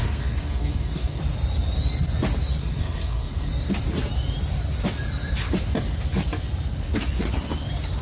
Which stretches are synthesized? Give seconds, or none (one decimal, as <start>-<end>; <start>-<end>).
0.0-1.2; 2.6-3.5